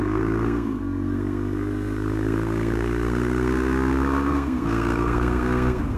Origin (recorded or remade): remade